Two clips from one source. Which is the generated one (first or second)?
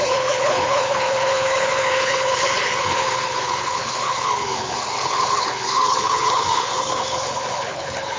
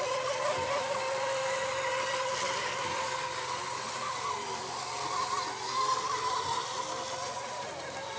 first